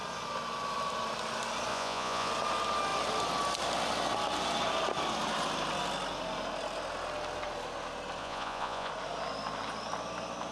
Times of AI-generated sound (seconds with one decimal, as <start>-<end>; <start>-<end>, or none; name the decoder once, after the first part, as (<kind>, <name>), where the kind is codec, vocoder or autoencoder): 1.7-2.3 (vocoder, Vocos); 8.2-8.9